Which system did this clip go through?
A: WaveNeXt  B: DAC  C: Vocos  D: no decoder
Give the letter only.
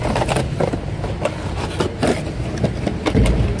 D